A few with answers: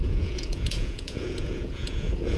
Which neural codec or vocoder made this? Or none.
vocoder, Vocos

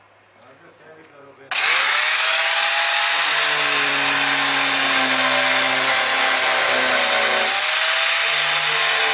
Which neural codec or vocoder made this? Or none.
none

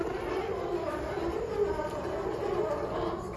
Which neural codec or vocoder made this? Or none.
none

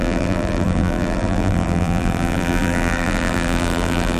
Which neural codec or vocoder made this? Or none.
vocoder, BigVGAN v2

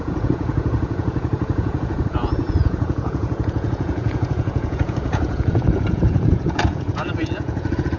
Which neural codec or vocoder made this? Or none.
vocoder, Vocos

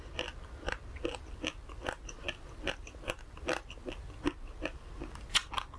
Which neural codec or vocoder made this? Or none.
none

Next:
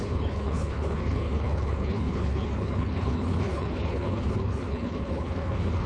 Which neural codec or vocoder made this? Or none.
codec, HILCodec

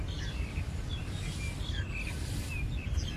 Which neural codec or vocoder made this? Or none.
none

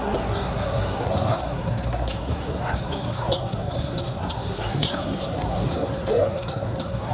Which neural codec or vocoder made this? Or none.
codec, SNAC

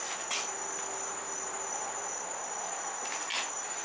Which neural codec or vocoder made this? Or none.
none